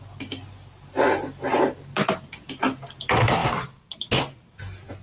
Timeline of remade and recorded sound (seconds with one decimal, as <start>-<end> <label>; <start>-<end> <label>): 0.0-5.0 recorded